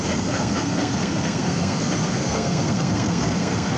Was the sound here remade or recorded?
remade